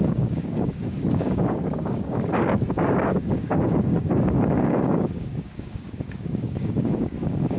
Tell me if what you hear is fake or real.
fake